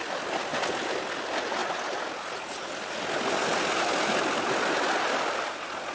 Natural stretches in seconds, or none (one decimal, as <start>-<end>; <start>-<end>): 0.0-5.9